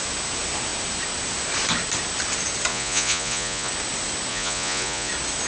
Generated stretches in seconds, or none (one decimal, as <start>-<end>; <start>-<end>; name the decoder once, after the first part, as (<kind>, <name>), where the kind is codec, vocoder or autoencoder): 2.7-3.7 (vocoder, Vocos); 4.3-5.1